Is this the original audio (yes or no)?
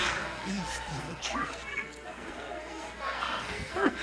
no